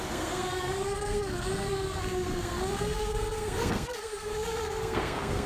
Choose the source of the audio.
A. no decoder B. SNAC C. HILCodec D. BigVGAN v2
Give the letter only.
B